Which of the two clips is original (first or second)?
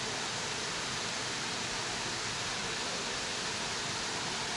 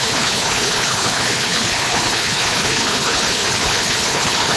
first